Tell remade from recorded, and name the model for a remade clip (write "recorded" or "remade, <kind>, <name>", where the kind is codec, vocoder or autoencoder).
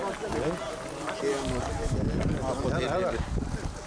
recorded